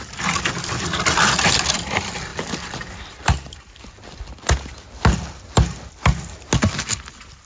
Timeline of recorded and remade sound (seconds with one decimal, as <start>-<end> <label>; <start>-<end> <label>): 0.0-7.5 recorded